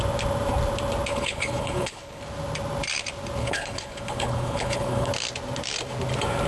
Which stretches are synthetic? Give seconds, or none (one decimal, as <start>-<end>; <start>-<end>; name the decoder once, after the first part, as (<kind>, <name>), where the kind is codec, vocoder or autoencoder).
1.1-2.2 (codec, HILCodec); 3.4-5.1